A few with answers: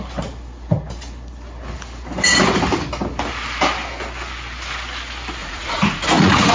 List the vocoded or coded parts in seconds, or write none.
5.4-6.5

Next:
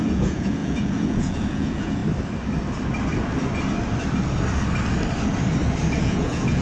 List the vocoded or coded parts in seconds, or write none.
0.0-2.0; 6.0-6.6

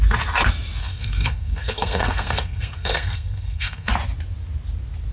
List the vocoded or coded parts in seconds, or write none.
0.8-3.9